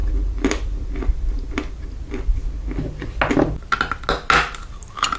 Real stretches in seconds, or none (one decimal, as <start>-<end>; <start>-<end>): 1.8-5.2

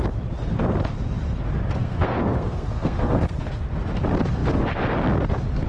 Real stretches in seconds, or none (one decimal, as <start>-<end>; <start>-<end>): 0.0-1.8; 3.6-5.7